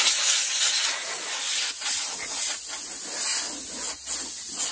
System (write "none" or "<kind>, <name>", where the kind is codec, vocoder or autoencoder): none